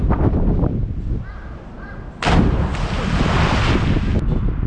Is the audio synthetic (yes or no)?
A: no